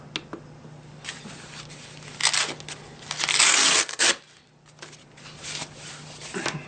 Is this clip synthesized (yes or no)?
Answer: no